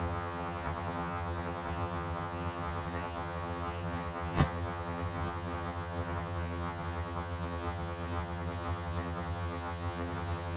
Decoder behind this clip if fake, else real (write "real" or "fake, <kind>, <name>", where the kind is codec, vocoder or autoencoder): fake, vocoder, HiFi-GAN